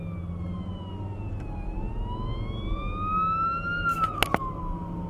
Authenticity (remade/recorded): recorded